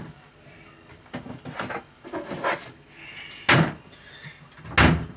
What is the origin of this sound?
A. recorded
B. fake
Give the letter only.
A